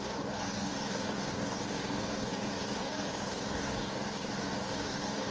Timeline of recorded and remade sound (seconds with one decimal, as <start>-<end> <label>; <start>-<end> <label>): 0.0-5.3 remade

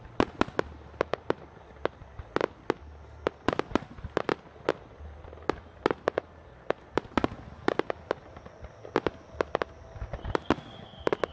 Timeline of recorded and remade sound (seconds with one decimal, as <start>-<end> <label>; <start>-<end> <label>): 0.0-11.3 recorded

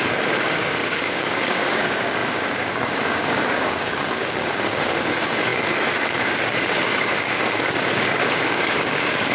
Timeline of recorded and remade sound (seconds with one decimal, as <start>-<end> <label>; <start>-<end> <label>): 0.0-9.3 remade

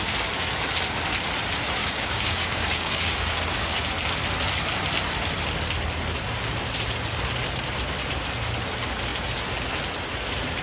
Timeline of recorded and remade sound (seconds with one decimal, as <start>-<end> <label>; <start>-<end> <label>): 0.0-1.8 recorded; 1.8-3.8 remade; 3.8-10.6 recorded

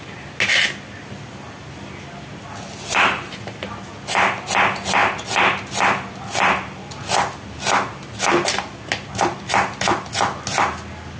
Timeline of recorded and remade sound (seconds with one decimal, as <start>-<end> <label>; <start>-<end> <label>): 0.0-11.2 recorded

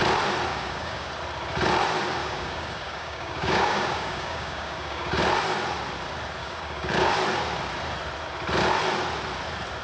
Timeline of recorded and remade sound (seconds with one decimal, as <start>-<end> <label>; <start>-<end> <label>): 0.0-0.5 recorded; 0.5-1.1 remade; 1.1-2.2 recorded; 2.2-5.2 remade; 5.2-6.4 recorded; 6.4-7.1 remade; 7.1-9.8 recorded

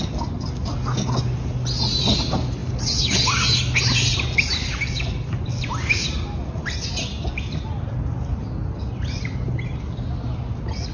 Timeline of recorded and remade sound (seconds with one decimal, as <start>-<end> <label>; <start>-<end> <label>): 0.0-10.9 recorded

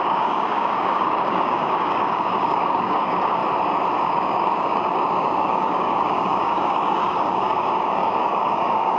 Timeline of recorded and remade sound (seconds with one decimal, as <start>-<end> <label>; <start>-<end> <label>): 0.0-3.4 remade; 3.4-4.1 recorded; 4.1-9.0 remade